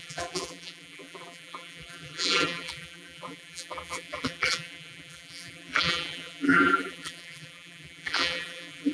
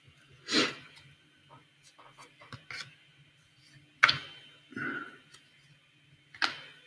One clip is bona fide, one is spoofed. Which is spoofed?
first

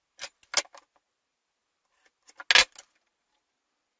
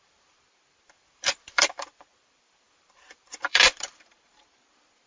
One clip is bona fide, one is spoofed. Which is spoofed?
second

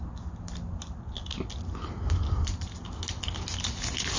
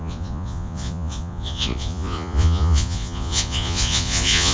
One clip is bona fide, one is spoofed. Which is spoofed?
second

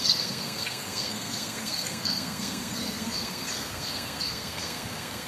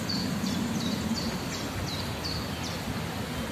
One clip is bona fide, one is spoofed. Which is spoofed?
first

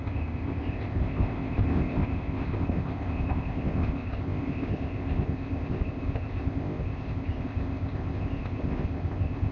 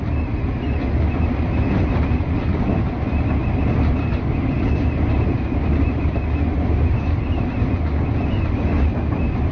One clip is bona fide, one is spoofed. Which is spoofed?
first